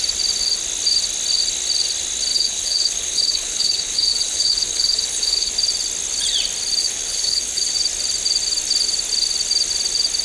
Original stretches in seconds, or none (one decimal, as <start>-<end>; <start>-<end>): 0.0-2.3; 5.5-6.8; 7.7-10.2

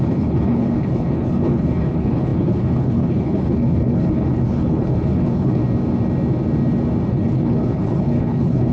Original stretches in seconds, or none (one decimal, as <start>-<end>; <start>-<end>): 5.6-7.1

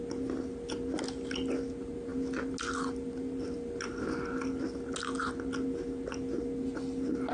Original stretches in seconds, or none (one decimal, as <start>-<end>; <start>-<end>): 0.0-7.3

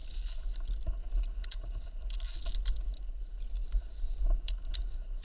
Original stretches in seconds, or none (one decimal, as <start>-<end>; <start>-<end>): 0.0-5.2